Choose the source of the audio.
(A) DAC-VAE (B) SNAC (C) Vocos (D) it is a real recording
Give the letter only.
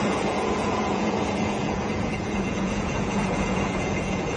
C